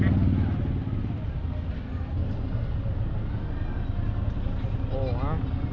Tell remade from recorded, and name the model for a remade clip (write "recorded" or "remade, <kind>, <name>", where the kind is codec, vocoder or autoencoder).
recorded